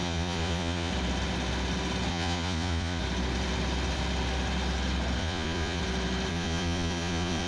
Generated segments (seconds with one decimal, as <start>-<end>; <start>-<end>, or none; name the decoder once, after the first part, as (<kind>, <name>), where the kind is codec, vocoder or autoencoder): 0.0-0.9 (vocoder, Vocos); 2.1-3.0; 5.2-5.8; 6.3-7.5